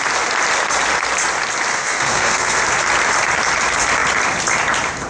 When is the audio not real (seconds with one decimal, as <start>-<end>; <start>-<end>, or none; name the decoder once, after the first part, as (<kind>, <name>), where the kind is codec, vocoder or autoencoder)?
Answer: 1.7-2.6 (codec, SNAC)